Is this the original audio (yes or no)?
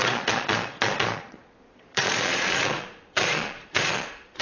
no